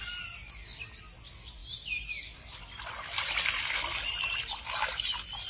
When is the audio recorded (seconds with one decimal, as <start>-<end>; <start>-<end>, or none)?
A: none